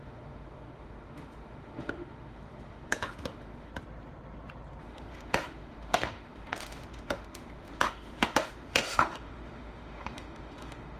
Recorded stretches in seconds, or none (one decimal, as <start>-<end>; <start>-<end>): 3.7-4.8